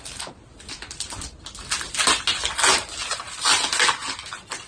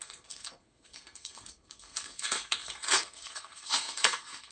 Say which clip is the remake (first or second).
second